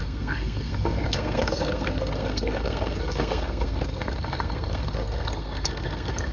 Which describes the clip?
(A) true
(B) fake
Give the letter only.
B